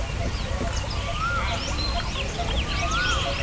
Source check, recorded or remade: recorded